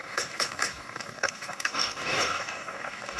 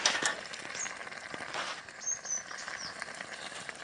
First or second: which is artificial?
first